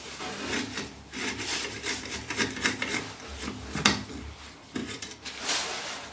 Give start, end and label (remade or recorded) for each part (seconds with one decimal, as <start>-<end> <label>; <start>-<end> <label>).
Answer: 0.0-1.2 recorded; 1.2-2.4 remade; 2.4-4.8 recorded; 4.8-5.4 remade; 5.4-6.1 recorded